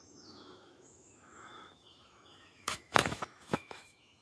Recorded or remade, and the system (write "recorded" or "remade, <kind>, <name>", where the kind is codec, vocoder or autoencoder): remade, autoencoder, DAC-VAE